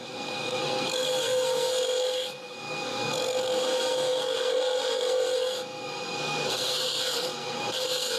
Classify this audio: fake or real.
fake